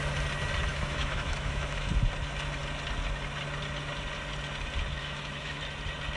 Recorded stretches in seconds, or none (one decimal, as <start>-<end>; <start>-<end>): 0.0-0.7; 1.9-5.0; 5.6-6.2